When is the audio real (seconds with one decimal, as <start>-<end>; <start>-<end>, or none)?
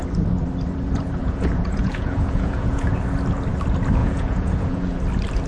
0.0-1.2; 3.0-4.0; 5.0-5.5